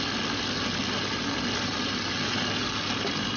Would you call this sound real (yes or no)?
yes